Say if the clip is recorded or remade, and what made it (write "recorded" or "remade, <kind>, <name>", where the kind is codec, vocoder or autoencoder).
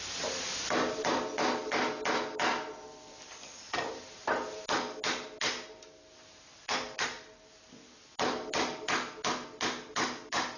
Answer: recorded